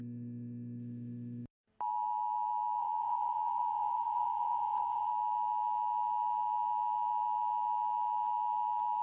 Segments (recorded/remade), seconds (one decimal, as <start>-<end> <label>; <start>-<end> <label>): 0.0-2.8 recorded; 2.8-5.1 remade; 5.1-9.0 recorded

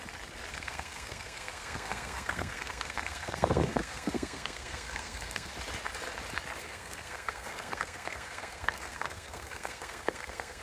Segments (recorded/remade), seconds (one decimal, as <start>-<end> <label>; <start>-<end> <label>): 0.0-0.5 recorded; 0.5-5.5 remade; 5.5-6.6 recorded; 6.6-10.6 remade

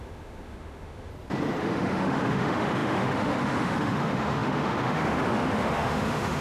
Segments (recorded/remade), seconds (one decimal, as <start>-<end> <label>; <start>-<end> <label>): 0.0-1.1 remade; 1.1-1.6 recorded; 1.6-6.4 remade

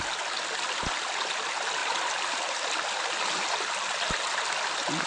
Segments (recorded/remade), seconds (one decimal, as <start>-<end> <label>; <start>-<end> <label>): 0.0-5.1 recorded

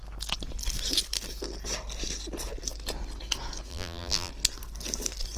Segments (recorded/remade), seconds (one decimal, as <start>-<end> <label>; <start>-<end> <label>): 0.0-3.7 recorded; 3.7-4.3 remade; 4.3-5.4 recorded

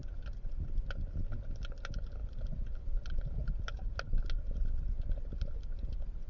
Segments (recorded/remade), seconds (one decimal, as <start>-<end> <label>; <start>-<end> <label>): 0.0-6.3 recorded

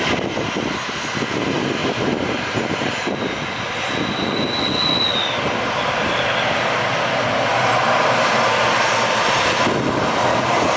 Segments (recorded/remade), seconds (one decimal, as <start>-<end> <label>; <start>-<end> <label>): 0.0-1.8 recorded; 1.8-3.3 remade; 3.3-10.8 recorded

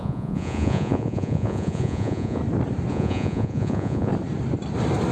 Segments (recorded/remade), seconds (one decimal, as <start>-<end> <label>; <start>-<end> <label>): 0.0-2.4 remade; 2.4-2.9 recorded; 2.9-4.1 remade; 4.1-5.1 recorded